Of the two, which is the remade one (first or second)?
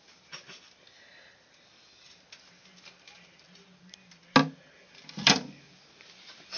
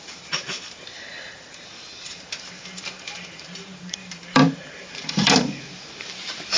second